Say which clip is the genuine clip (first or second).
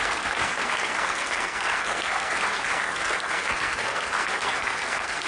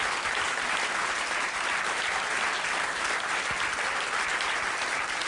second